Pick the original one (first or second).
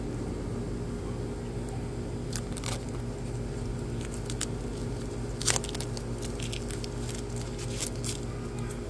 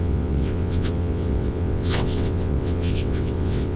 first